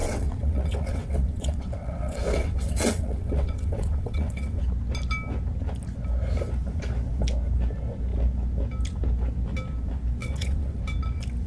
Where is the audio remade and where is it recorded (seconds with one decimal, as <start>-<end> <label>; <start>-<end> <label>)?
0.0-4.6 remade; 4.6-10.2 recorded; 10.2-10.8 remade; 10.8-11.5 recorded